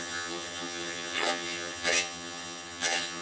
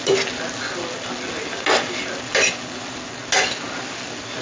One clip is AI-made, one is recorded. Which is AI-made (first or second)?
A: first